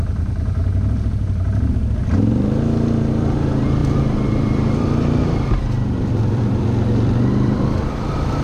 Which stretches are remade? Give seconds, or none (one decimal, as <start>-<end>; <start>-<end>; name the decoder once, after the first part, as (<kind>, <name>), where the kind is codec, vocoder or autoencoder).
0.0-2.0 (vocoder, BigVGAN v2); 3.1-8.4